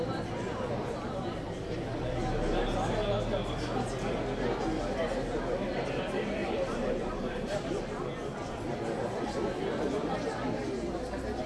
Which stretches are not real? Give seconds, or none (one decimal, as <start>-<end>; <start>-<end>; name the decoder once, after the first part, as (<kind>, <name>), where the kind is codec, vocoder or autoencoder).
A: 6.4-8.0 (vocoder, BigVGAN v2)